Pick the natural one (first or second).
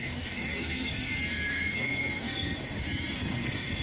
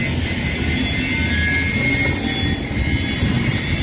second